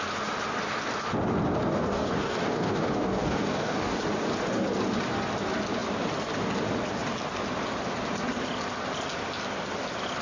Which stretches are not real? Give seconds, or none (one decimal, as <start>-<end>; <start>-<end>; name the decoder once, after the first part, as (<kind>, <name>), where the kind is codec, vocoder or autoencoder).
1.7-4.0 (codec, DAC)